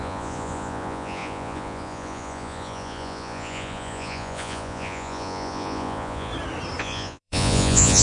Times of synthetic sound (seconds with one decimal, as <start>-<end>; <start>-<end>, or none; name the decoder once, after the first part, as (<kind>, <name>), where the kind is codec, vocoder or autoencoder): 0.0-6.3 (vocoder, Vocos); 6.8-8.0

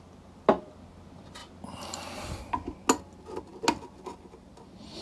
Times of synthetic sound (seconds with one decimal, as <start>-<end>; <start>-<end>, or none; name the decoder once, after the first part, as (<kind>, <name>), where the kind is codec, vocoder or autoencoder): none

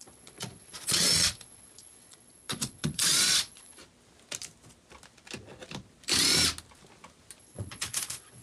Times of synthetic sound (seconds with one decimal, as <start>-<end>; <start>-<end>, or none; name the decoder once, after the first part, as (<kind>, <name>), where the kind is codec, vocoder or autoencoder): 0.0-3.8 (vocoder, Vocos); 7.4-8.4

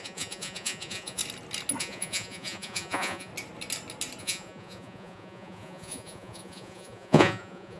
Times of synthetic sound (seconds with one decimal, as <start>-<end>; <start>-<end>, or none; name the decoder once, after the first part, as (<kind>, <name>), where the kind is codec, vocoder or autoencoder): 0.0-1.2 (vocoder, Vocos); 1.8-3.3; 4.2-7.8

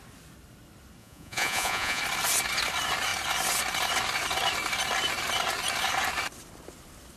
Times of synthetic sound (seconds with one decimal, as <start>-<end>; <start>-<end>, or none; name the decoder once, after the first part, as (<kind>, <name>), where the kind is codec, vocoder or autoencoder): 1.0-2.0 (vocoder, Vocos)

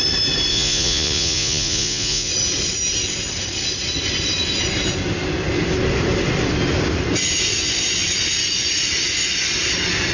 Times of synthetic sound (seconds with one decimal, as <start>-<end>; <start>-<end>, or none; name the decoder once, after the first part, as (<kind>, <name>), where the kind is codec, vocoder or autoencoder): 0.5-2.3 (vocoder, Vocos)

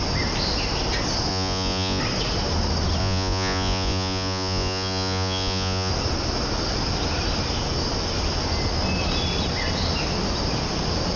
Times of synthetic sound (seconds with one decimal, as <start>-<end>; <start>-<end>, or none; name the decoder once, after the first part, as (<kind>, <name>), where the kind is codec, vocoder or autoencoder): 1.3-2.0 (vocoder, Vocos); 3.0-5.9